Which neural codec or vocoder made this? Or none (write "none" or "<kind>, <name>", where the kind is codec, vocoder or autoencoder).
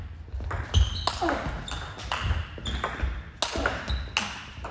none